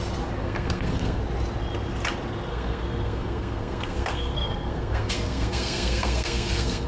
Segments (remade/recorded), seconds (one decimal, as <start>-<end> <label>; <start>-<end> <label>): 0.0-0.4 recorded; 0.4-1.2 remade; 1.2-2.5 recorded; 2.5-6.9 remade